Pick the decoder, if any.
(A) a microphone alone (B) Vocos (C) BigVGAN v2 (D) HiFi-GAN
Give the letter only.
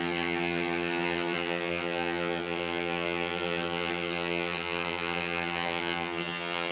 D